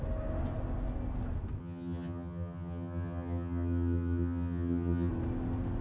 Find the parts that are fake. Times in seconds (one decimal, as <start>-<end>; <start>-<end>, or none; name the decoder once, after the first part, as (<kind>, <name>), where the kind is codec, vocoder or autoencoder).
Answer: 1.6-5.1 (vocoder, HiFi-GAN)

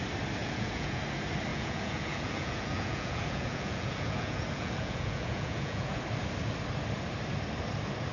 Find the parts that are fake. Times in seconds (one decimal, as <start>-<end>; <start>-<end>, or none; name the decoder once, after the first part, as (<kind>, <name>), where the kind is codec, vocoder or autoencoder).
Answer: 0.4-1.0 (vocoder, Vocos); 1.5-6.0

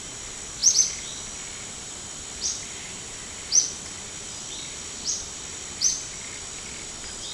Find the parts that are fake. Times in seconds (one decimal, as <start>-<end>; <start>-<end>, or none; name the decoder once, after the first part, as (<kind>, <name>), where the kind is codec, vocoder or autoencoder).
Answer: none